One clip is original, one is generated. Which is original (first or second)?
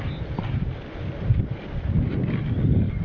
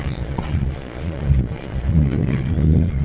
first